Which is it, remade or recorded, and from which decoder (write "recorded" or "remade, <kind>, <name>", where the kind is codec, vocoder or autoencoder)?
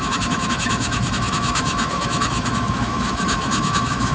remade, autoencoder, DAC-VAE